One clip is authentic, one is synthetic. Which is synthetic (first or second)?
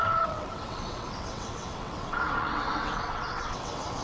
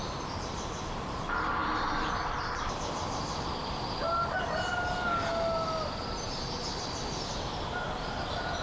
first